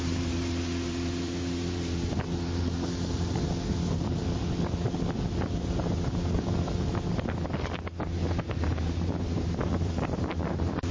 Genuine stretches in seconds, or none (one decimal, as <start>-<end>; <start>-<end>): 4.2-8.5